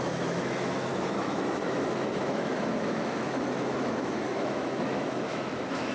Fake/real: fake